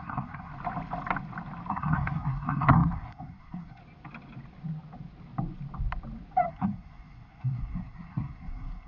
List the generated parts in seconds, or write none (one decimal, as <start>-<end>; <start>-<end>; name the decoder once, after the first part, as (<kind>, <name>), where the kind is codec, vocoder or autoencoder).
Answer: 0.0-0.5 (codec, SNAC); 1.7-3.8; 6.5-8.9